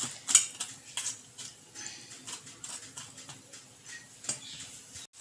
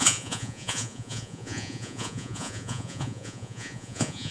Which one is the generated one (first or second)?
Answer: second